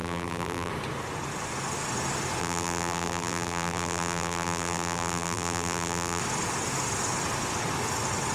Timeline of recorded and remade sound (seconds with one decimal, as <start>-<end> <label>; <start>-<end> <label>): 0.0-0.7 remade; 0.7-2.4 recorded; 2.4-6.2 remade; 6.2-8.3 recorded

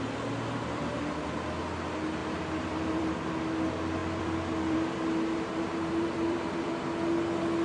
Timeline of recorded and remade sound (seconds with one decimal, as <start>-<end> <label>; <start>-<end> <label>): 0.0-2.2 recorded; 2.2-3.1 remade; 3.1-4.0 recorded; 4.0-6.7 remade; 6.7-7.6 recorded

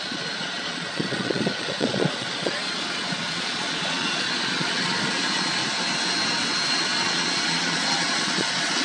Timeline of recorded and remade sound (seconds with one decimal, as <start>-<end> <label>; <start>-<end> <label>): 0.0-5.6 remade; 5.6-6.7 recorded; 6.7-8.8 remade

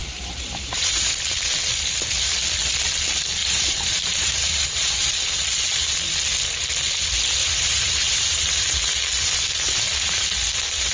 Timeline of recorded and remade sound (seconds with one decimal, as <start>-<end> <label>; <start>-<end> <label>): 0.0-1.1 remade; 1.1-3.4 recorded; 3.4-5.1 remade; 5.1-7.4 recorded; 7.4-8.8 remade; 8.8-10.9 recorded

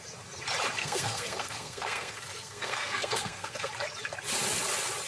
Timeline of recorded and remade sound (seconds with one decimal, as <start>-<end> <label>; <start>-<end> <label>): 0.0-0.8 recorded; 0.8-3.7 remade; 3.7-5.1 recorded

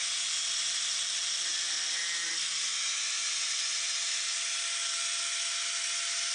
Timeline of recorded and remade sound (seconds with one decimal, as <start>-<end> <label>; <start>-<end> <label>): 0.0-6.3 recorded

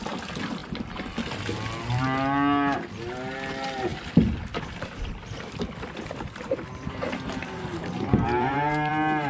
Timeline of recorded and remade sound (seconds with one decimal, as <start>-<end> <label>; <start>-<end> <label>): 0.0-3.9 recorded; 3.9-8.9 remade; 8.9-9.3 recorded